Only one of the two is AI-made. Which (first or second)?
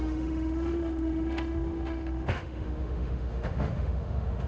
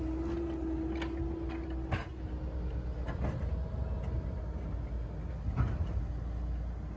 first